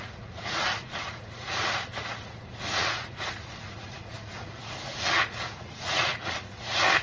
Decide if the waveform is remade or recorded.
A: remade